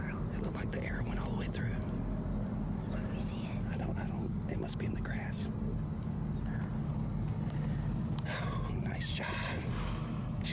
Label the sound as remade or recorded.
recorded